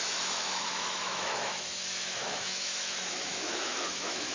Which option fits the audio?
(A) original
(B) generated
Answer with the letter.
B